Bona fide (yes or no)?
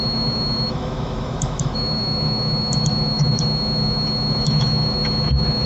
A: no